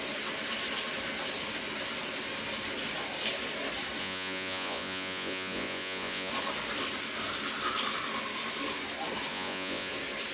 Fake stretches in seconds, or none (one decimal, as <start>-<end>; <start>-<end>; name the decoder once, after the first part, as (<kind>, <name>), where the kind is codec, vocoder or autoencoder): 4.0-6.3 (vocoder, Vocos); 9.3-9.9